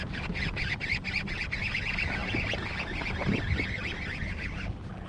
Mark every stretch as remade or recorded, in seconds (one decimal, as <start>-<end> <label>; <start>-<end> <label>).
0.0-5.1 recorded